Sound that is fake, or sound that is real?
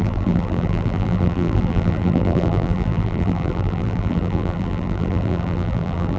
fake